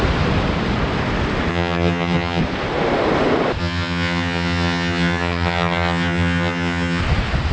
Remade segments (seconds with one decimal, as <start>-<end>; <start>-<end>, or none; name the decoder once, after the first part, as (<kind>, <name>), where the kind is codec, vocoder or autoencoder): 1.5-2.4 (vocoder, HiFi-GAN); 3.6-7.0